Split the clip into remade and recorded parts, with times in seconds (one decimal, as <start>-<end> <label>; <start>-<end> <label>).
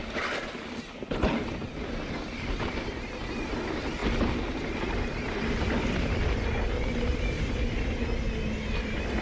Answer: 0.0-9.2 recorded